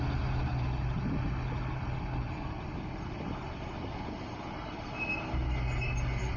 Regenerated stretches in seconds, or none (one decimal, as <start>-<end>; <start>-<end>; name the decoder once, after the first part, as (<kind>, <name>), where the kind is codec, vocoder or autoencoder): none